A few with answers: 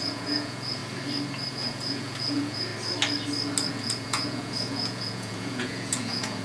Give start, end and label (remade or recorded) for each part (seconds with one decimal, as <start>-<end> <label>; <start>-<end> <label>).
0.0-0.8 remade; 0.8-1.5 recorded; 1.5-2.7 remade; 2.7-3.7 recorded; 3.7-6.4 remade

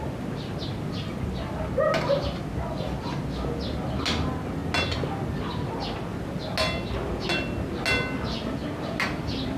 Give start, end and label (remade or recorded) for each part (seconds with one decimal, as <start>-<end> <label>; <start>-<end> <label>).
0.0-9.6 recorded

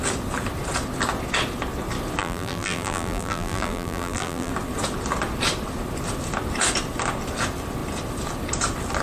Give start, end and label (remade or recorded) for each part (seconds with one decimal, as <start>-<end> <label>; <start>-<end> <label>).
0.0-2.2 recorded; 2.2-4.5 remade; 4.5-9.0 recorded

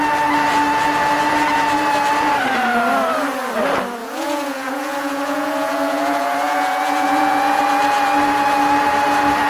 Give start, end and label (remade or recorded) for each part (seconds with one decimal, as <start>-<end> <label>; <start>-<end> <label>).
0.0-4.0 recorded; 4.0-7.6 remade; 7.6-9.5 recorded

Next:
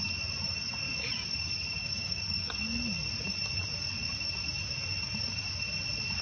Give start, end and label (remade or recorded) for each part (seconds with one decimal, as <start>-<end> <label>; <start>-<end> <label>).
0.0-1.8 recorded; 1.8-2.5 remade; 2.5-6.2 recorded

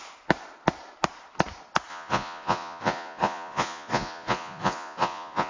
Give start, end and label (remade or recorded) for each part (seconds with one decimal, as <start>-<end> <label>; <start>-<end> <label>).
0.0-1.9 recorded; 1.9-5.5 remade